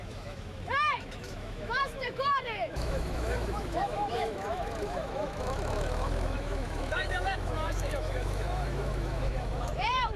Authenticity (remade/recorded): remade